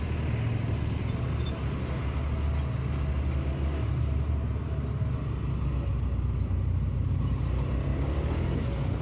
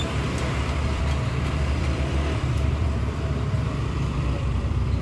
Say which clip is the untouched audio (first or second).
first